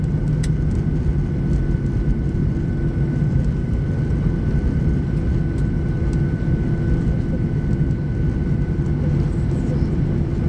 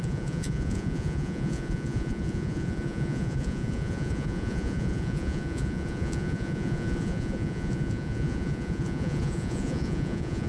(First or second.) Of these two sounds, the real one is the first